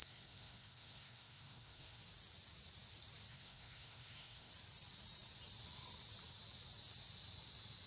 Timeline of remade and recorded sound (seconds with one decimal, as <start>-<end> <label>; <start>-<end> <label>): 0.0-2.0 remade; 2.0-3.3 recorded; 3.3-4.5 remade; 4.5-7.9 recorded